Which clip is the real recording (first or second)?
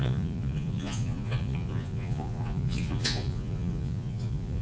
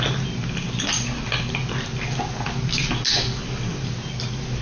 second